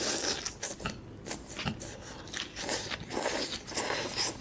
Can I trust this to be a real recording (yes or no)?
yes